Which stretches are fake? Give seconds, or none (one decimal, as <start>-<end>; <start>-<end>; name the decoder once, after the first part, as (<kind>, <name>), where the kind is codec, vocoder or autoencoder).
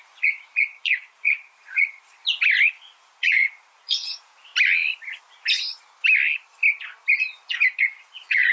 0.0-2.2 (vocoder, Vocos); 2.7-4.5; 7.8-8.5